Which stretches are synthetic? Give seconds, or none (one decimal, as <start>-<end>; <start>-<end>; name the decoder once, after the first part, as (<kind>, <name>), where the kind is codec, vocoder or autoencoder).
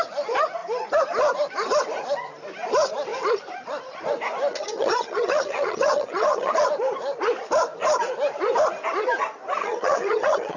4.5-6.5 (vocoder, HiFi-GAN); 9.6-10.6